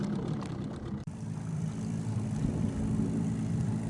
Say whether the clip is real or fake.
fake